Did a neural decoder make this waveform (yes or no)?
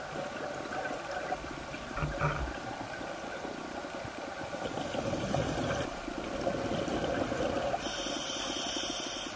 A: no